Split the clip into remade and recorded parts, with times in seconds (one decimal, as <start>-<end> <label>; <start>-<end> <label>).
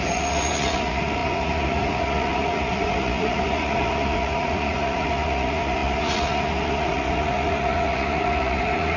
0.0-9.0 remade